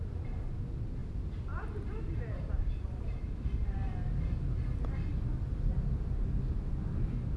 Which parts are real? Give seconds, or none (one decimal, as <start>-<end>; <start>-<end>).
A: 0.0-7.4